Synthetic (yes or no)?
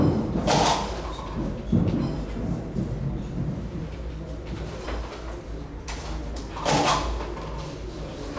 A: no